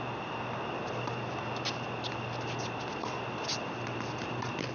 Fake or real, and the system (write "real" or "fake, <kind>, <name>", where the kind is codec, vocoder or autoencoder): real